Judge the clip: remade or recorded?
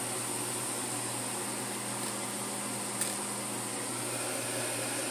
recorded